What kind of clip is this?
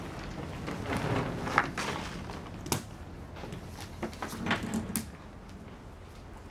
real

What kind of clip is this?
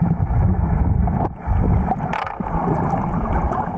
real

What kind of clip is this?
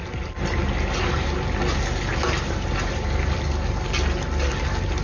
real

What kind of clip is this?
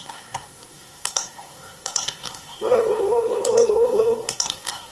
fake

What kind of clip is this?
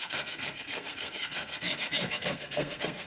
fake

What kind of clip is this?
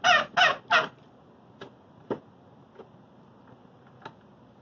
real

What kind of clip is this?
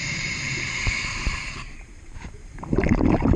fake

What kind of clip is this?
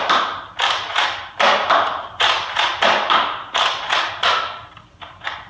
real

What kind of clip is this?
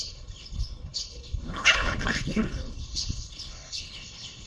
fake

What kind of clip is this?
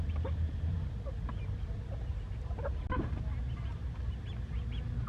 real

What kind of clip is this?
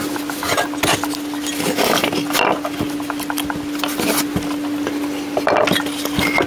real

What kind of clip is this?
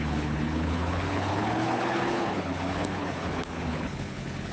fake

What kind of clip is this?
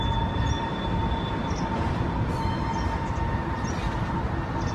real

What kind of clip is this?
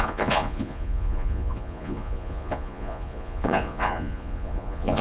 fake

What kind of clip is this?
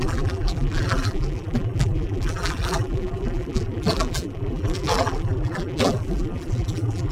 fake